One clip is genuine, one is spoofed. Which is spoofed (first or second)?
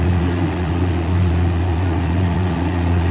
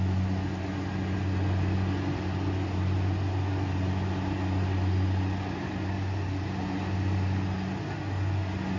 first